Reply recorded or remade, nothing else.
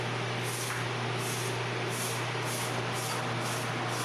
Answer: recorded